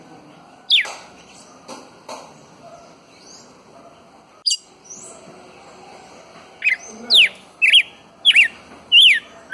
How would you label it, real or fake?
real